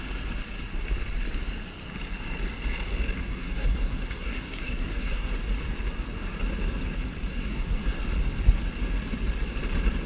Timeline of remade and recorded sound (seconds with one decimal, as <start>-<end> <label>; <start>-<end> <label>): 0.0-3.3 recorded; 3.3-5.3 remade; 5.3-7.3 recorded; 7.3-8.0 remade; 8.0-10.1 recorded